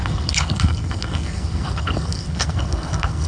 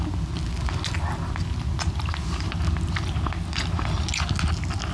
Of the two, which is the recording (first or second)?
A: second